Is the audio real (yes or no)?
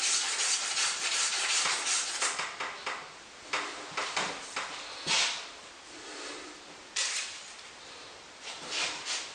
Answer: yes